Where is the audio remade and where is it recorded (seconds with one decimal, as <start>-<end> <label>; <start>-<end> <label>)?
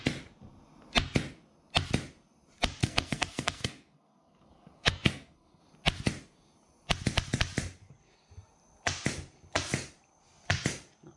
0.0-2.8 recorded; 2.8-5.6 remade; 5.6-11.2 recorded